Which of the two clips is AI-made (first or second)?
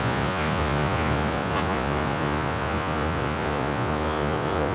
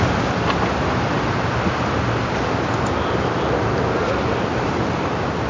first